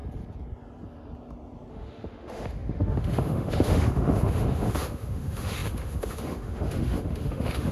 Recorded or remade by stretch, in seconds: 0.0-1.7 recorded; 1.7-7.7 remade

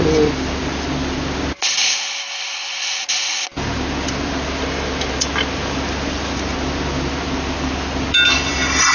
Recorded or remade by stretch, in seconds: 0.0-8.9 recorded

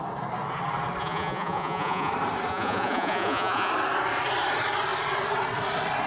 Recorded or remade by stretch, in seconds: 0.0-1.0 recorded; 1.0-2.1 remade; 2.1-2.5 recorded; 2.5-3.7 remade; 3.7-6.1 recorded

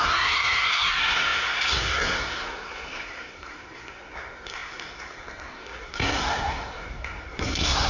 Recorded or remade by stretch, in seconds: 0.0-7.9 remade

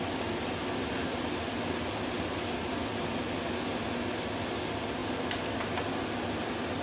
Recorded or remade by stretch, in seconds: 0.0-6.8 recorded

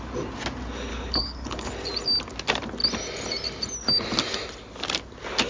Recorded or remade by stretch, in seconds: 0.0-0.9 recorded; 0.9-1.7 remade; 1.7-5.5 recorded